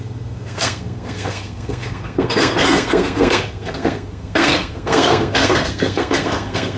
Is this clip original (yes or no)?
no